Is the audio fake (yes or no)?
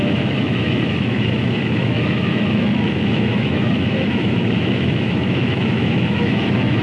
yes